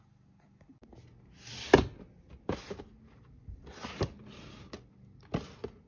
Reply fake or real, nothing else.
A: real